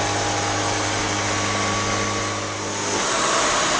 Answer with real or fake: real